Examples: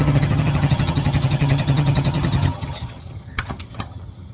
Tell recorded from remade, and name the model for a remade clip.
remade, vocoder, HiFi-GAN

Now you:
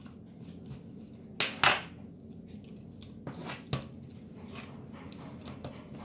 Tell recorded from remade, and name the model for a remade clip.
recorded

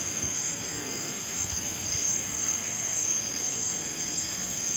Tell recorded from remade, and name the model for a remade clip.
remade, codec, SNAC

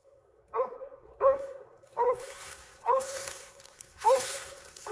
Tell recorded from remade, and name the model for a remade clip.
remade, codec, SNAC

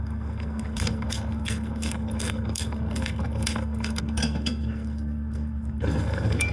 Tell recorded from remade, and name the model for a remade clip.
remade, codec, SNAC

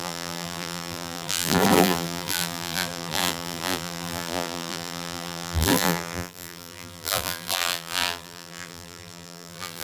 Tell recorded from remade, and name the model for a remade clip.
remade, vocoder, BigVGAN v2